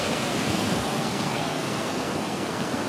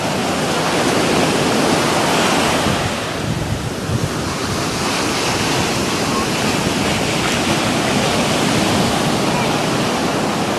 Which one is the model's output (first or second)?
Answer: first